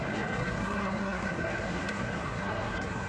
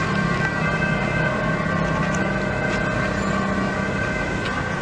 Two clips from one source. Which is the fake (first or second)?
first